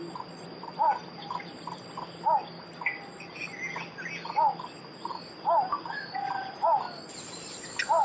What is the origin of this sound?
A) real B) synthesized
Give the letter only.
A